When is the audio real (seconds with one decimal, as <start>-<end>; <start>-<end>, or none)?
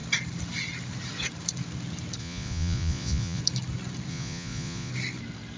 0.0-2.2; 3.4-4.1; 4.9-5.6